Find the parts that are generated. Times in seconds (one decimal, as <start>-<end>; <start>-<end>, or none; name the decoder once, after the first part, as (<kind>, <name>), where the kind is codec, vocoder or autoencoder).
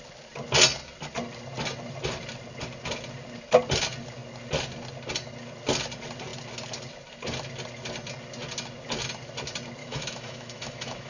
9.8-11.1 (autoencoder, DAC-VAE)